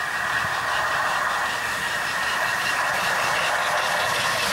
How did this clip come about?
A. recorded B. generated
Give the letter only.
A